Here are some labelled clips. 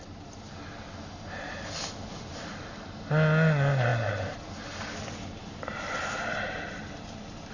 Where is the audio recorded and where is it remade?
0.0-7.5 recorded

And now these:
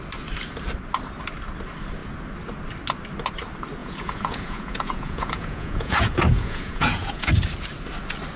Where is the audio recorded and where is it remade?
0.0-3.8 recorded; 3.8-7.3 remade; 7.3-8.4 recorded

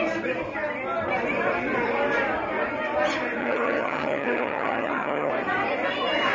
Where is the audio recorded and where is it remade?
0.0-3.4 recorded; 3.4-5.3 remade; 5.3-6.3 recorded

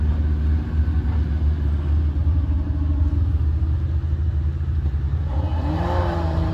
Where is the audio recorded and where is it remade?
0.0-2.2 recorded; 2.2-2.7 remade; 2.7-5.5 recorded; 5.5-6.5 remade

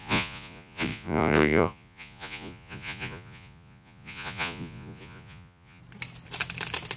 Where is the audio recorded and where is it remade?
0.0-5.8 remade; 5.8-7.0 recorded